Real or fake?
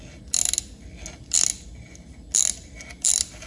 real